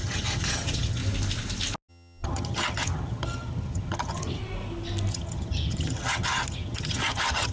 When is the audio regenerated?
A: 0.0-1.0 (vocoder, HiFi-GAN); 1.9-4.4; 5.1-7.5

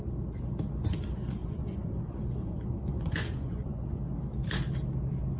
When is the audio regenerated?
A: 1.4-2.0 (vocoder, Vocos); 2.4-4.0

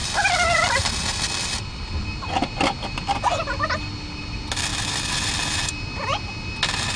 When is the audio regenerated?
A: none

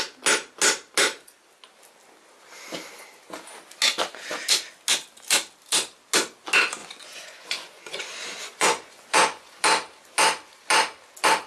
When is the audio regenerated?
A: 6.8-9.6 (vocoder, Vocos)

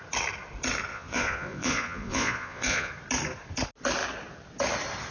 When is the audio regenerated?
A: 0.9-2.9 (vocoder, Vocos)

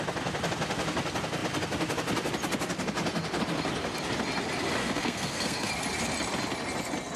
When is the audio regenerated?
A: 4.8-5.7 (codec, SNAC)

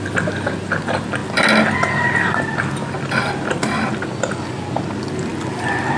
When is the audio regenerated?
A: none

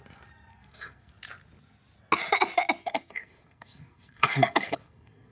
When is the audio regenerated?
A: 0.5-1.1 (codec, SNAC); 2.8-5.3